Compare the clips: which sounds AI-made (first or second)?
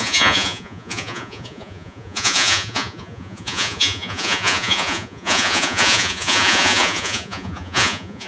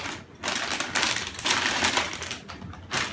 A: first